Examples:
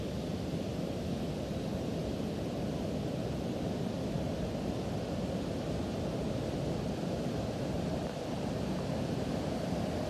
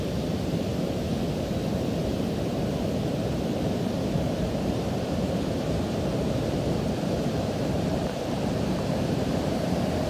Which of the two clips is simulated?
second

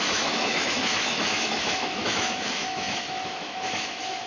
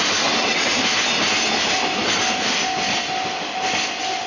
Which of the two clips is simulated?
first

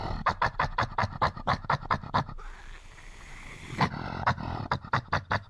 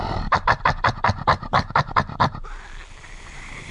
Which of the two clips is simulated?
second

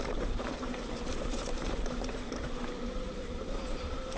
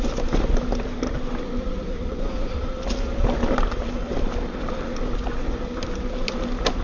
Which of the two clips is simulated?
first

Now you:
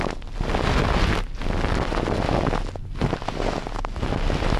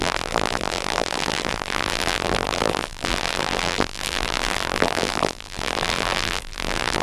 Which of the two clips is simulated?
second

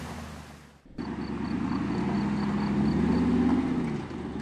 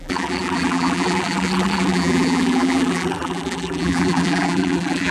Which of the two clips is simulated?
second